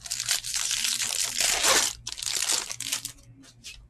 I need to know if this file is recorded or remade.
recorded